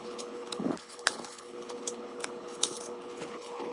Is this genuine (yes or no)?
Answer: no